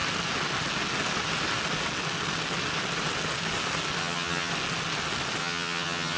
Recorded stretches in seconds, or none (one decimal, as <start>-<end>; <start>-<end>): 0.0-4.0; 4.5-5.4